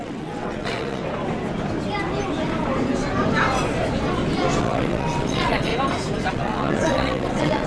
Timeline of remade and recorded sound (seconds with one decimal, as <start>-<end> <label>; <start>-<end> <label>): 0.0-1.0 remade; 1.0-4.6 recorded; 4.6-5.7 remade; 5.7-6.3 recorded; 6.3-7.7 remade